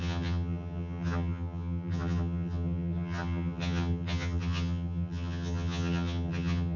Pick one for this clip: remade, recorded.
remade